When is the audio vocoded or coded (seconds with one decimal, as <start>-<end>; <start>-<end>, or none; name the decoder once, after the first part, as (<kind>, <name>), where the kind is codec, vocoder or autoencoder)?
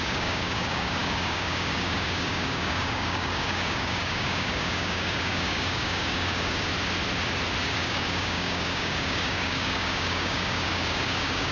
0.0-6.7 (codec, DAC); 7.6-11.5